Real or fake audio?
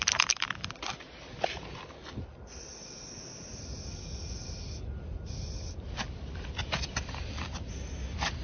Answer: real